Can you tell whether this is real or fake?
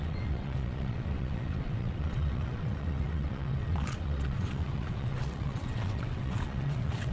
fake